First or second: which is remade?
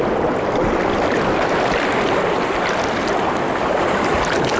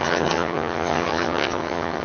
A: second